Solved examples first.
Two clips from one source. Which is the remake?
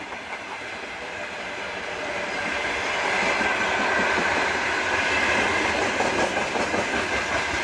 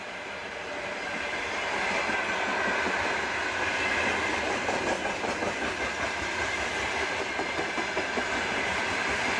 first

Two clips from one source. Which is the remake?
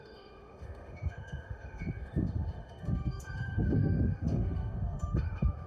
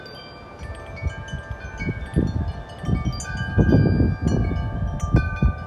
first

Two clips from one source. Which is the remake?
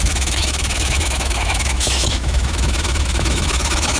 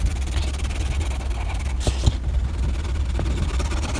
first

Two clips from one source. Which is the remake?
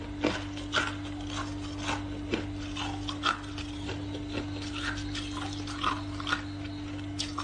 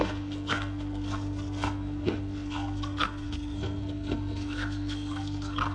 second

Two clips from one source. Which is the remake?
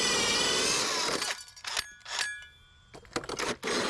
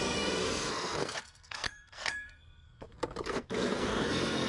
second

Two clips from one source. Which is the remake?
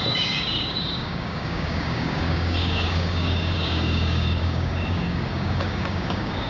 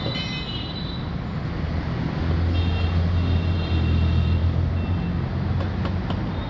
first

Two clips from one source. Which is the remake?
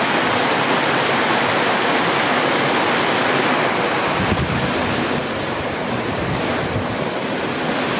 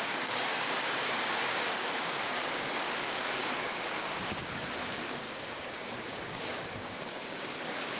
second